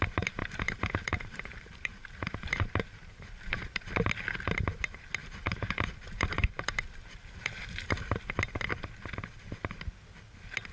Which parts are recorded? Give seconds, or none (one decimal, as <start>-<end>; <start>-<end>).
0.0-0.4; 3.8-5.2; 7.9-10.7